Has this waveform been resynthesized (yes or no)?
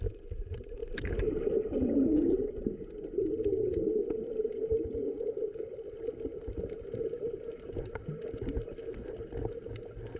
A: no